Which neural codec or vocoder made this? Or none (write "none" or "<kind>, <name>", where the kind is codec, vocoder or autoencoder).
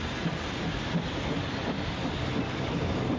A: none